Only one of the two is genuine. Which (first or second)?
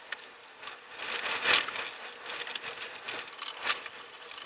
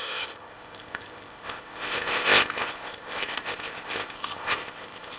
first